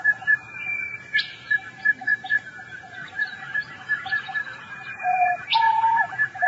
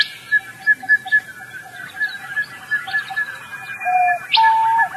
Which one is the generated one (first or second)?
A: first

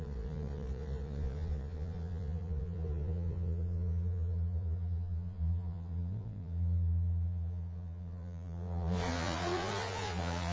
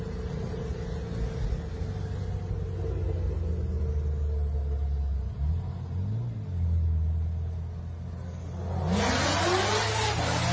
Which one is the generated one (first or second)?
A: first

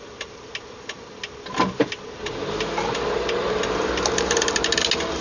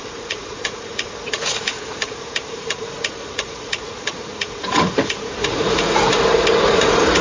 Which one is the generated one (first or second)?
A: second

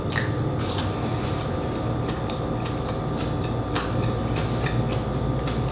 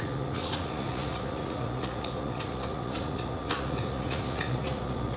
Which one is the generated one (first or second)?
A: second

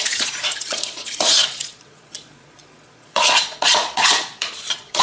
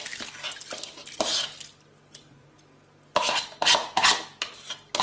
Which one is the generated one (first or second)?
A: first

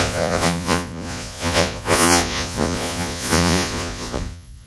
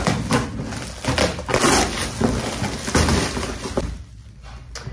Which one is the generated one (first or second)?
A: first